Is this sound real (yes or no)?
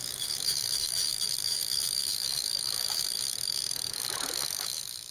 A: no